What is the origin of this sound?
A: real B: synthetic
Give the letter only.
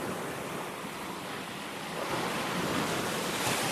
A